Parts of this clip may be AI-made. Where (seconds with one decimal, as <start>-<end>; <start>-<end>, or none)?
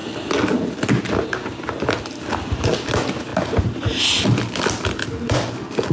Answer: 3.3-4.0